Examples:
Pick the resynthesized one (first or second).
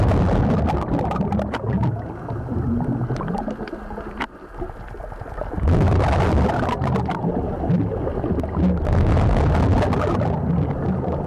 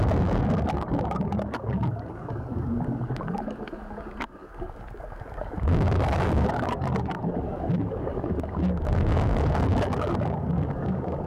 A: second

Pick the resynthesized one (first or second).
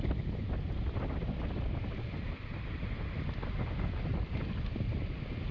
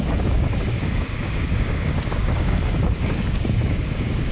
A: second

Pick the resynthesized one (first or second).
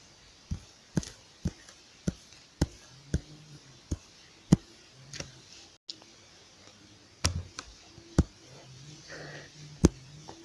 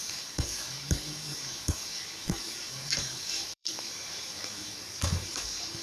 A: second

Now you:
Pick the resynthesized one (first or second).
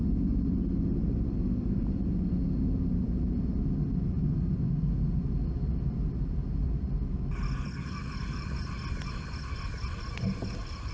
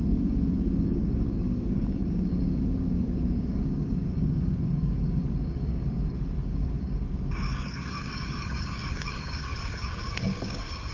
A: second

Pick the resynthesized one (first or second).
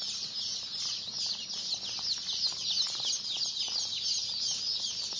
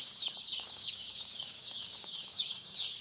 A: second